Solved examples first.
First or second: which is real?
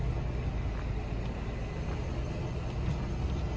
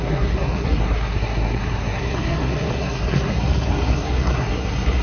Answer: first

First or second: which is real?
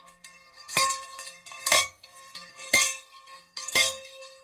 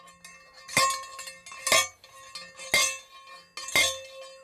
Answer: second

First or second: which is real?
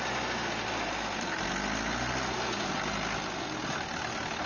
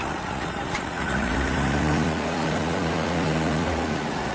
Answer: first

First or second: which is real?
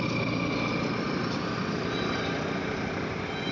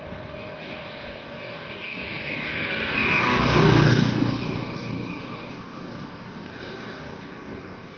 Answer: first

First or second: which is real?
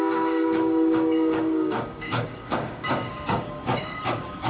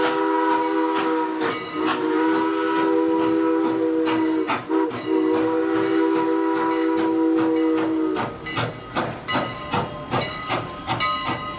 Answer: second